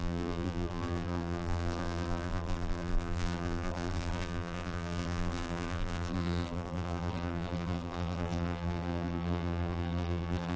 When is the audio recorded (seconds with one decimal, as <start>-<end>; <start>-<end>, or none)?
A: none